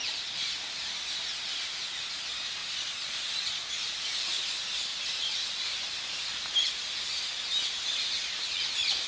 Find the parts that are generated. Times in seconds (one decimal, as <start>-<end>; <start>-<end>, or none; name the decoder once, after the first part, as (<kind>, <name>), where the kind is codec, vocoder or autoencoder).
4.9-6.7 (vocoder, BigVGAN v2)